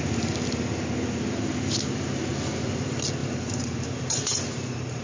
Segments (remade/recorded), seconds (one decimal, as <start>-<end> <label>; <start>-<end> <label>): 0.0-1.5 recorded; 1.5-2.3 remade; 2.3-3.2 recorded; 3.2-5.0 remade